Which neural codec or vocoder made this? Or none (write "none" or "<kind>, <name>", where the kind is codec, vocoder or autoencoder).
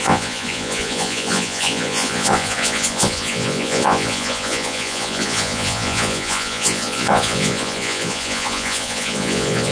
vocoder, Vocos